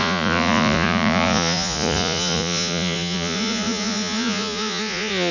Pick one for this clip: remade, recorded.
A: remade